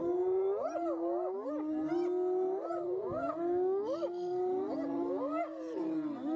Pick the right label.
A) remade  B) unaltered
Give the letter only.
B